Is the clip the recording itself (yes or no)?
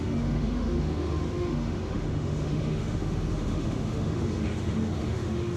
no